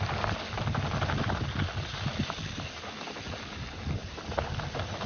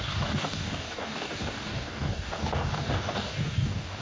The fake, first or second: second